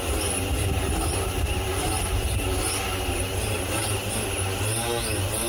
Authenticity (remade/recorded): recorded